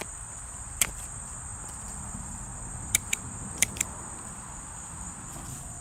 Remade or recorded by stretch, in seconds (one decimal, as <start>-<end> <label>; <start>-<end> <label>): 0.0-5.8 remade